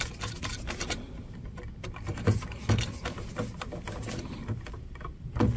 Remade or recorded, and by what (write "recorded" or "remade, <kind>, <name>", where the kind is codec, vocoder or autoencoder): recorded